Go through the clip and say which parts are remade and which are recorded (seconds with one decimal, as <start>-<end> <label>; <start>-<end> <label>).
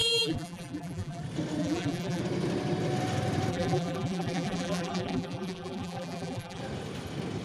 0.0-1.2 remade; 1.2-1.6 recorded; 1.6-2.2 remade; 2.2-3.5 recorded; 3.5-6.6 remade; 6.6-7.4 recorded